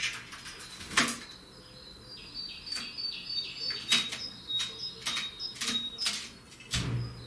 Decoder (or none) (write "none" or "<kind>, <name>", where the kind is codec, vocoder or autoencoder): none